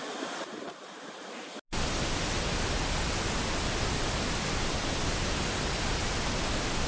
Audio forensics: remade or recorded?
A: recorded